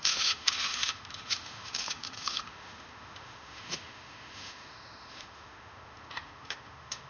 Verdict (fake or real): fake